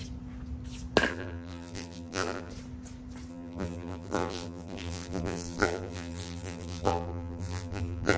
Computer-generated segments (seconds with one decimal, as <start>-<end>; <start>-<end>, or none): 1.1-2.5; 3.3-8.2